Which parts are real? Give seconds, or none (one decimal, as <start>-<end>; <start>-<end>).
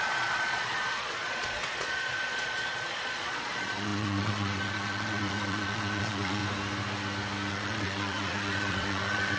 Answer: 6.4-7.5